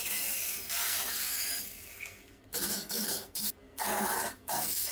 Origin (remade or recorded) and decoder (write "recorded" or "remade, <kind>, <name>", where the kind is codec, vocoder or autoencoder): remade, codec, SNAC